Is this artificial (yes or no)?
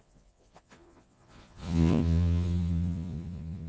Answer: yes